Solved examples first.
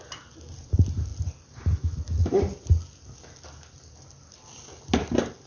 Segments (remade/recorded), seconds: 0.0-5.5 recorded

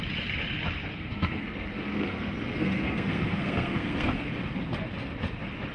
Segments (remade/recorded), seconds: 0.0-0.9 recorded; 0.9-4.3 remade; 4.3-5.7 recorded